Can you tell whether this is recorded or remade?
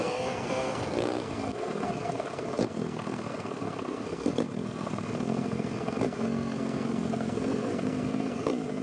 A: remade